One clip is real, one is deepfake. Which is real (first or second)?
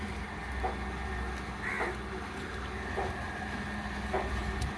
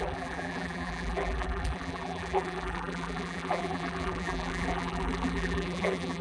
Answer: first